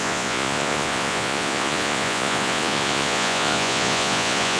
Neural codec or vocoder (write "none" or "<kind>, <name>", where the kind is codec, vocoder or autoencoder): vocoder, Vocos